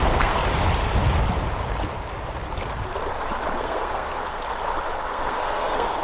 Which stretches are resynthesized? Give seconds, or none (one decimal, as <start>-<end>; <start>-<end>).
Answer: 0.0-0.4; 3.6-4.4; 5.0-6.0